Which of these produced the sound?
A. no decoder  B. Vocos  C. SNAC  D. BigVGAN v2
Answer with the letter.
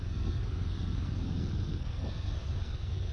C